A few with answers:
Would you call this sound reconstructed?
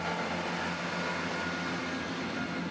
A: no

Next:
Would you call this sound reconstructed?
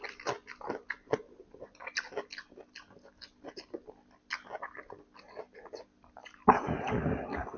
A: no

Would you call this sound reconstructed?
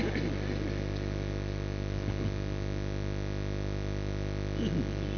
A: no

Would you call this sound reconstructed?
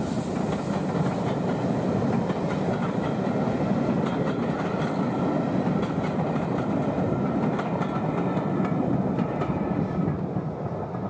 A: no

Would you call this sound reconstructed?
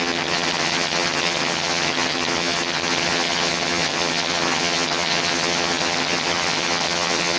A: yes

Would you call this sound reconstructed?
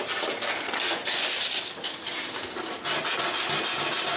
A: no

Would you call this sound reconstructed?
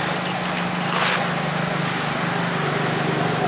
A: no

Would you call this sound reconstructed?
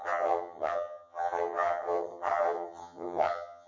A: yes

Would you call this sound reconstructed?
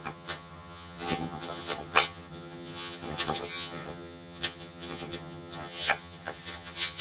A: yes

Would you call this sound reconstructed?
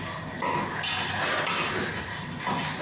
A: no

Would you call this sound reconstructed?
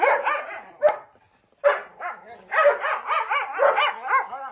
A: no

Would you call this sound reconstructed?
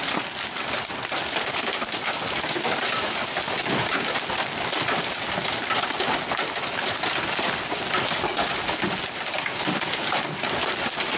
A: no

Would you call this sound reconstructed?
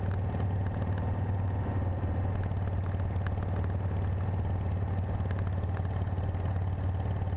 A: no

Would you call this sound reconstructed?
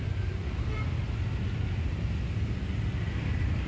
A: no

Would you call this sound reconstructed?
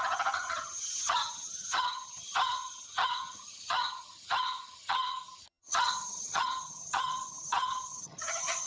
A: yes